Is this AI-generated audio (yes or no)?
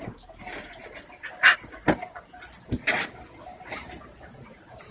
no